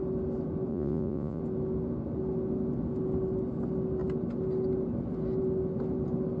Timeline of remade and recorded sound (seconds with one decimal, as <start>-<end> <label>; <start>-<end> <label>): 0.0-0.7 recorded; 0.7-1.4 remade; 1.4-6.4 recorded